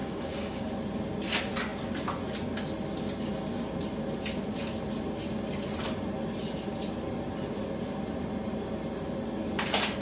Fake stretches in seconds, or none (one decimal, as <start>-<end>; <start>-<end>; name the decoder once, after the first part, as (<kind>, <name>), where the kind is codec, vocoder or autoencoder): 0.0-0.7 (codec, DAC)

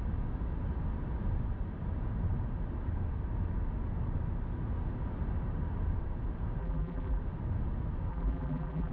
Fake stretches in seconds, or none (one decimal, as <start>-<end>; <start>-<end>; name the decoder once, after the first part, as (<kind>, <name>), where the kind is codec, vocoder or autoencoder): 6.6-7.2 (vocoder, BigVGAN v2); 8.1-8.9

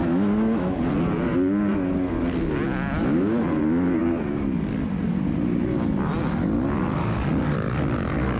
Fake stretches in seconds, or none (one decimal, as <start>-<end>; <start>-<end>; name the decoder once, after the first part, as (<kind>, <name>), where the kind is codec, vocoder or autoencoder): 0.0-0.8 (autoencoder, DAC-VAE)

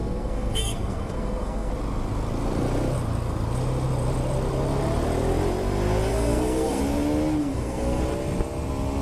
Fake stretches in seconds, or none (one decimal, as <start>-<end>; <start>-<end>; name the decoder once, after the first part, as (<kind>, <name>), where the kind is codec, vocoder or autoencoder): 0.0-1.7 (codec, SNAC); 6.1-6.8; 7.4-8.0

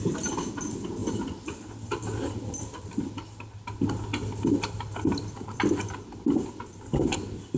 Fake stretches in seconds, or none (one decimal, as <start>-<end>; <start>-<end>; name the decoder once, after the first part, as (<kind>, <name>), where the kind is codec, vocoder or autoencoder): none

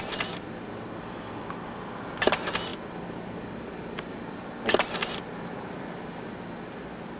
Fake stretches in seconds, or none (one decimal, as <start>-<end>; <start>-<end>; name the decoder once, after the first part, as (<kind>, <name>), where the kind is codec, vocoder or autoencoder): none